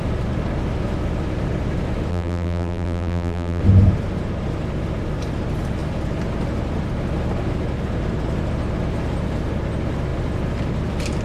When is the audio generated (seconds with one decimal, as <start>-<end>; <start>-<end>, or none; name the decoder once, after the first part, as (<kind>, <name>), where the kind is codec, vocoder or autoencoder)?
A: 2.1-3.6 (vocoder, BigVGAN v2)